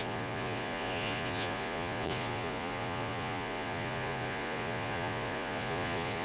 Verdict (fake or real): fake